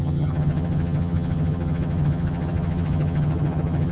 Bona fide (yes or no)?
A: no